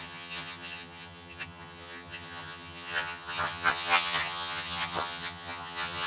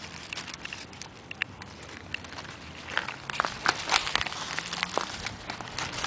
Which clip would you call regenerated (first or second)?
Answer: first